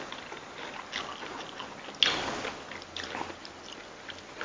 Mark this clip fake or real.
real